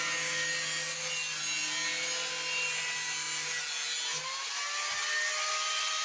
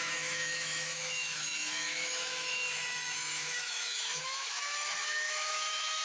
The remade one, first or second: second